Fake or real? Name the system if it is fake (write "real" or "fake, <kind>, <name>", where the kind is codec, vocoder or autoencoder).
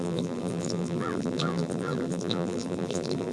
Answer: fake, vocoder, BigVGAN v2